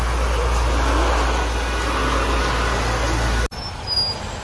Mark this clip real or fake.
real